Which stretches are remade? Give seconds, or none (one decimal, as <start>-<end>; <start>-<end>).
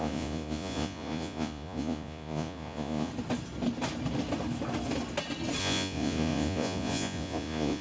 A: 0.0-3.1; 5.6-7.8